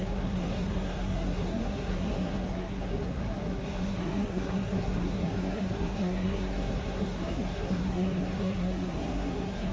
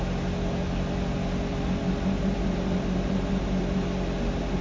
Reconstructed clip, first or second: first